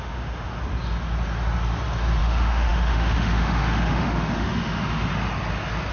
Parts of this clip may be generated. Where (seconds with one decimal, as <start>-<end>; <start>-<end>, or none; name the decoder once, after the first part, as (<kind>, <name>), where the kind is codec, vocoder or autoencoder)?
0.0-0.6 (autoencoder, DAC-VAE); 2.2-5.1